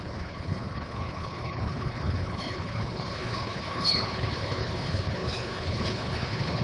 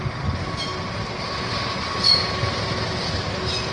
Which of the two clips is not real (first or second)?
first